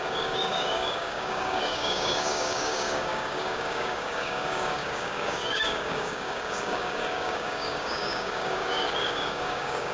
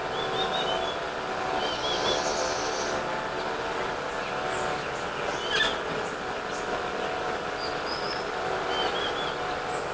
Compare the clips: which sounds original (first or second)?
second